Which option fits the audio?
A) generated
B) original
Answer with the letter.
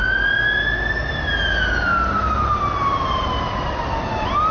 B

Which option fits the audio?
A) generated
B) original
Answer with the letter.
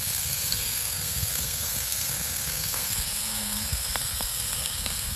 A